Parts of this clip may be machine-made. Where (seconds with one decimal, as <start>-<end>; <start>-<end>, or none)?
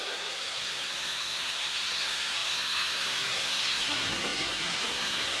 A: 0.0-5.4